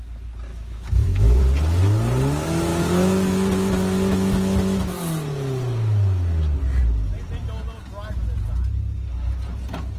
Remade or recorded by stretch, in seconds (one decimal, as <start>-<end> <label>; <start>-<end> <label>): 0.0-0.5 recorded; 0.5-1.4 remade; 1.4-10.0 recorded